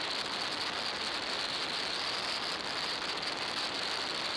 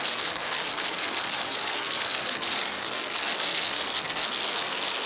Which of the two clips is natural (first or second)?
first